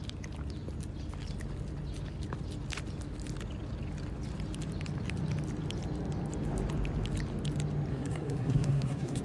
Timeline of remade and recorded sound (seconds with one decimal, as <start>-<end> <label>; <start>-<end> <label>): 0.0-7.9 recorded; 7.9-9.2 remade